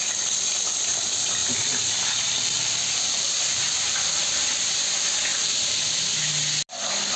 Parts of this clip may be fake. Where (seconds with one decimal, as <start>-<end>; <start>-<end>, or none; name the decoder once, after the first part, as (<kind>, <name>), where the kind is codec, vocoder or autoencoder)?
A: 1.4-4.7 (vocoder, BigVGAN v2); 5.3-5.8